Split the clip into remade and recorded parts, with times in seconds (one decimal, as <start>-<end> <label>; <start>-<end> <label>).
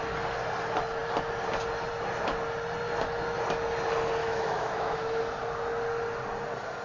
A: 0.0-4.2 recorded; 4.2-5.2 remade; 5.2-6.8 recorded